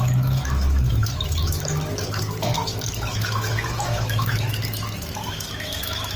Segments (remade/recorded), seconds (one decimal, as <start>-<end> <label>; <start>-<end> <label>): 0.0-6.2 remade